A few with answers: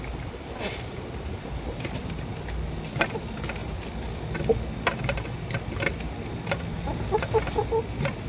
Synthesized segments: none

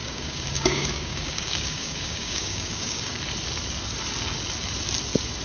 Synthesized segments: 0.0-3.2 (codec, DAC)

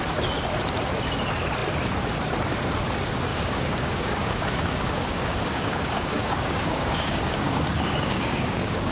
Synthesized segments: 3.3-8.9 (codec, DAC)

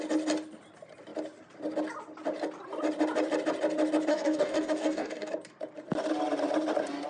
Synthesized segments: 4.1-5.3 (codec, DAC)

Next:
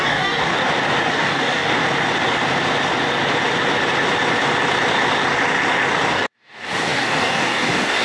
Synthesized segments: 0.0-0.5 (codec, DAC); 1.1-1.8; 6.1-8.0

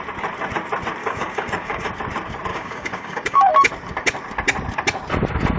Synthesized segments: 1.0-1.9 (codec, DAC); 2.5-3.5